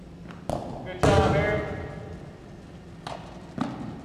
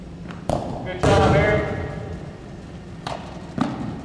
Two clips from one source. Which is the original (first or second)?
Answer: first